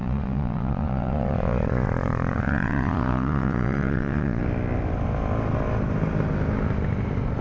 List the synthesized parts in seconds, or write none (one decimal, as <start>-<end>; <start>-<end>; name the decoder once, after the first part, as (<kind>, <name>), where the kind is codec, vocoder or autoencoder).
0.0-4.4 (vocoder, Vocos)